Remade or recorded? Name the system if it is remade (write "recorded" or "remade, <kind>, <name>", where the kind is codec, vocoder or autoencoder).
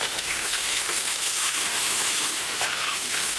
remade, autoencoder, DAC-VAE